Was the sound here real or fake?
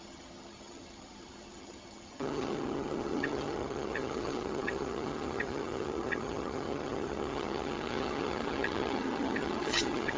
fake